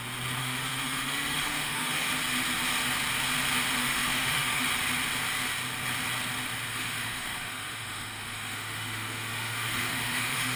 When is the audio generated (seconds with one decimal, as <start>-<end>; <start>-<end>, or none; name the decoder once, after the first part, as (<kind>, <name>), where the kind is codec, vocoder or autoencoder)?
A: 0.4-2.1 (autoencoder, DAC-VAE); 3.8-4.6; 6.7-10.6